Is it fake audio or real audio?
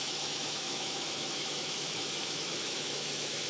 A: fake